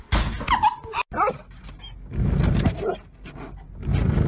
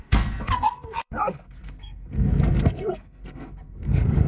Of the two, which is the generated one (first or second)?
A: second